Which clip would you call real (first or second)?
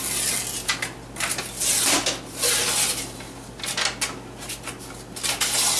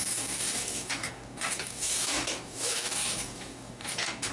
first